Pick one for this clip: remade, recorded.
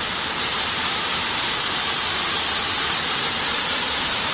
remade